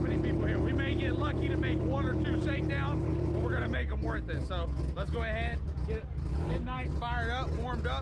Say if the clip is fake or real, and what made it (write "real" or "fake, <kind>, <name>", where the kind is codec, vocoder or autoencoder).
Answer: real